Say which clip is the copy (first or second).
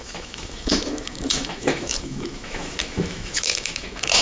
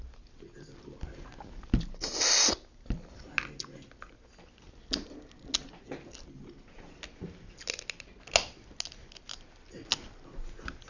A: first